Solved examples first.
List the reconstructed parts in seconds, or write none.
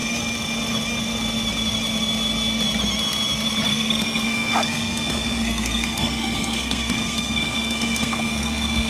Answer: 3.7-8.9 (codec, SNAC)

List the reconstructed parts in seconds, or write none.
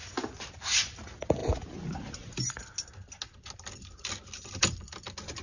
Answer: none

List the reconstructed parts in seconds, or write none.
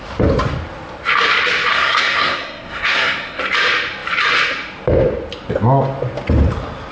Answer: 1.7-3.4 (codec, SNAC)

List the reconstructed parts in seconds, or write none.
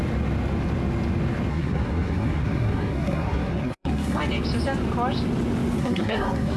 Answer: 1.5-4.2 (codec, SNAC); 5.8-6.6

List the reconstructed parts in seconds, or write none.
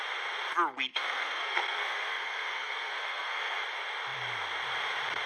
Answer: 0.9-3.6 (codec, SNAC)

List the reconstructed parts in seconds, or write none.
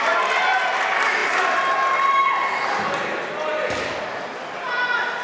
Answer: none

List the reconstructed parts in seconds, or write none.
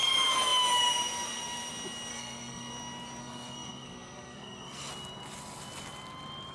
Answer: 2.1-2.7 (codec, SNAC); 3.2-4.9